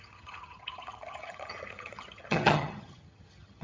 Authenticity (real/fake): fake